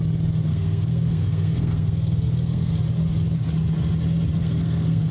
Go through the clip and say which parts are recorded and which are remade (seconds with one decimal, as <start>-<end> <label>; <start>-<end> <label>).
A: 0.0-0.5 recorded; 0.5-2.7 remade; 2.7-4.4 recorded; 4.4-5.1 remade